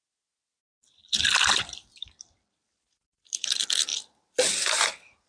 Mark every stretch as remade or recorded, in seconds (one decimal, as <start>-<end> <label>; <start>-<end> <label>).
0.0-0.6 recorded; 0.6-3.5 remade; 3.5-5.3 recorded